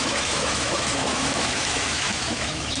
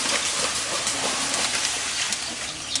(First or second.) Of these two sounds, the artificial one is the first